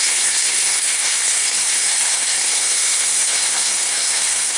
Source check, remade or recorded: remade